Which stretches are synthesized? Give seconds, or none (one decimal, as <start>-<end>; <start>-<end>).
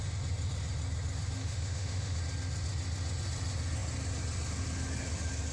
1.4-2.2